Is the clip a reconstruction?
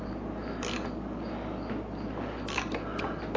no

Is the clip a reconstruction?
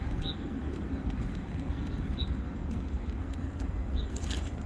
yes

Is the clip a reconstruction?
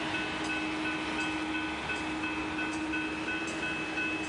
no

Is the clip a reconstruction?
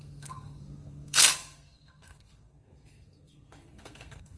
yes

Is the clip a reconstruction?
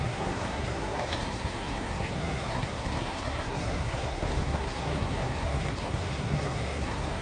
yes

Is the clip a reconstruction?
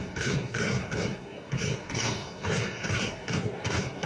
yes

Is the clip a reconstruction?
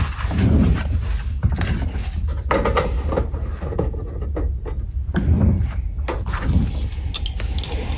no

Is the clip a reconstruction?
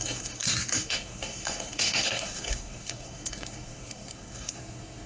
yes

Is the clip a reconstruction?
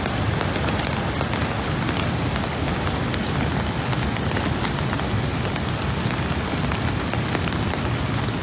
no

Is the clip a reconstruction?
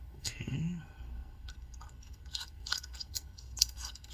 yes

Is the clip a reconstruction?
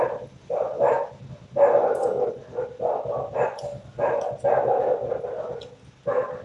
no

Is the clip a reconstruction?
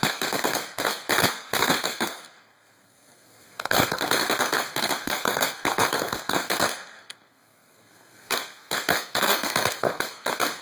yes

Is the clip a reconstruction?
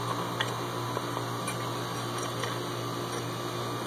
no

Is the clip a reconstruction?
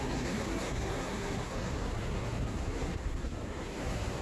yes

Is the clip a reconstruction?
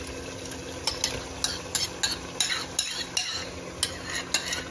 no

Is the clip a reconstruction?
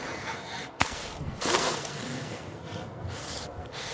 yes